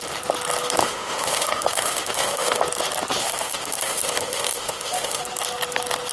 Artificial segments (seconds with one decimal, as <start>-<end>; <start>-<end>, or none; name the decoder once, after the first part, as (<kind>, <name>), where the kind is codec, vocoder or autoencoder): 0.8-2.6 (autoencoder, DAC-VAE); 3.2-5.2